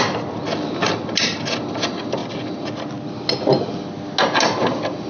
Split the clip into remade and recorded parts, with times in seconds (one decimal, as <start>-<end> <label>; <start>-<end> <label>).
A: 0.0-5.1 recorded